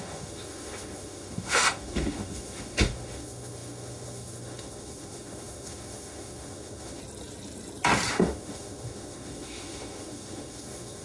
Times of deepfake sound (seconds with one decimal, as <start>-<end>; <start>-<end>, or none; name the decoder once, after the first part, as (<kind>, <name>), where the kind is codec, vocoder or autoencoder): 0.0-7.0 (autoencoder, DAC-VAE); 8.1-11.0